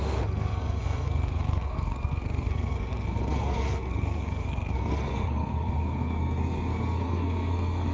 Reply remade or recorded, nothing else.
remade